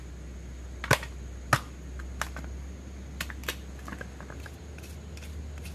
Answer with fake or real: real